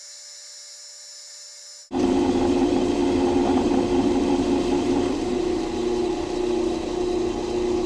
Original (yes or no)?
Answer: yes